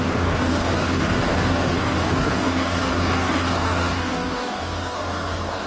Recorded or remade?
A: remade